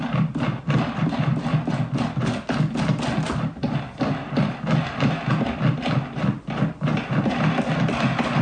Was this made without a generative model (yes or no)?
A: yes